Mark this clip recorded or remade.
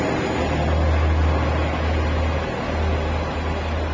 recorded